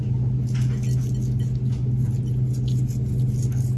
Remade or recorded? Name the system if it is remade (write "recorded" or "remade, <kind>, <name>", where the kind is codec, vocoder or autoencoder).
recorded